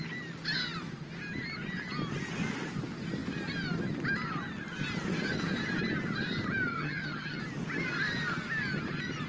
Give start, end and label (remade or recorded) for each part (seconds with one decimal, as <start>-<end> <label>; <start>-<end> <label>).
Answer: 0.0-6.7 recorded; 6.7-7.4 remade; 7.4-9.3 recorded